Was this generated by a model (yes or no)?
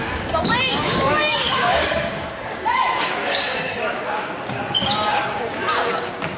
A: yes